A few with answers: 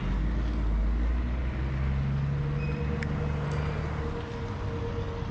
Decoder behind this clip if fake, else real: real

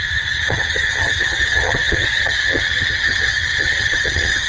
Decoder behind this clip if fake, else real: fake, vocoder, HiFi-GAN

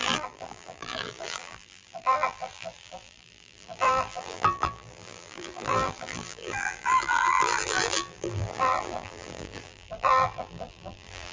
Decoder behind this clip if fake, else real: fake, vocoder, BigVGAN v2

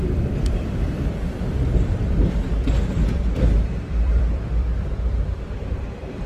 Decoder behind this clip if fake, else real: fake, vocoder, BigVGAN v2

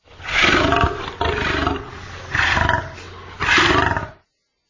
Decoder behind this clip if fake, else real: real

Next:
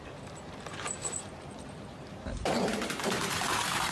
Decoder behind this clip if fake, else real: fake, vocoder, BigVGAN v2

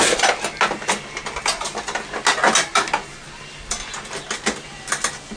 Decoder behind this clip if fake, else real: real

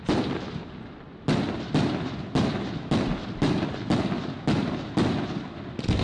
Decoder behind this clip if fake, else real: real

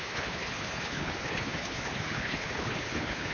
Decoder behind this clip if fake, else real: fake, codec, HILCodec